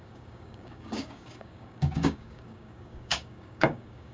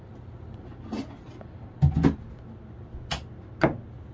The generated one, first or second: first